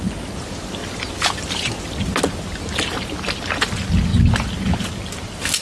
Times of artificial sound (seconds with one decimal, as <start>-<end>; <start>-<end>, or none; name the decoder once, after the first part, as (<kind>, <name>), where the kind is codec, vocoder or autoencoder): none